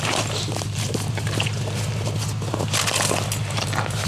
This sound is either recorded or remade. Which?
recorded